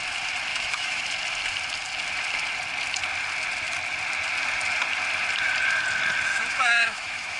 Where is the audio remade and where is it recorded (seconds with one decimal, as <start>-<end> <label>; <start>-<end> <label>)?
0.0-0.5 recorded; 0.5-1.0 remade; 1.0-6.3 recorded; 6.3-7.4 remade

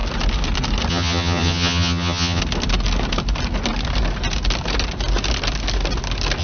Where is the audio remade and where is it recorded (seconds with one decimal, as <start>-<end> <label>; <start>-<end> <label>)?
0.0-0.9 recorded; 0.9-2.4 remade; 2.4-6.4 recorded

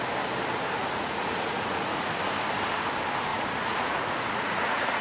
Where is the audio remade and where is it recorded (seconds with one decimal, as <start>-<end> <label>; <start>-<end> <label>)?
0.0-0.8 recorded; 0.8-2.1 remade; 2.1-3.3 recorded; 3.3-5.0 remade

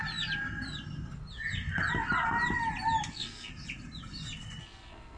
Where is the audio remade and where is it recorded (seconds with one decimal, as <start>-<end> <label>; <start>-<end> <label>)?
0.0-3.1 recorded; 3.1-3.5 remade; 3.5-4.6 recorded; 4.6-5.2 remade

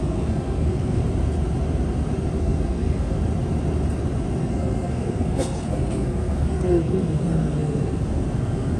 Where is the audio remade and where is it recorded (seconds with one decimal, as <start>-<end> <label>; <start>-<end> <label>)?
0.0-1.0 remade; 1.0-2.4 recorded; 2.4-3.2 remade; 3.2-4.4 recorded; 4.4-8.8 remade

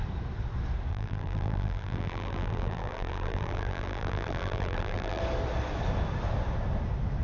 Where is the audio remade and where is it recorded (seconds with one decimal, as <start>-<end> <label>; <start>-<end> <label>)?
0.0-0.9 recorded; 0.9-5.2 remade; 5.2-7.2 recorded